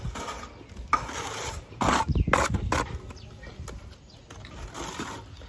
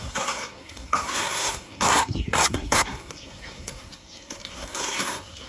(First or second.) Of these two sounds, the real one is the first